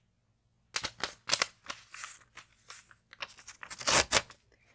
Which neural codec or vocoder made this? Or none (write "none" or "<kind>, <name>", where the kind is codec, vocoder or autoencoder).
none